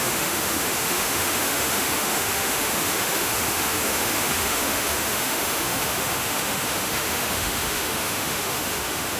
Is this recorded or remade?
remade